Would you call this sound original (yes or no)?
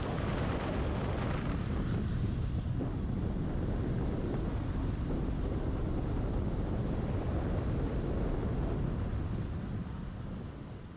yes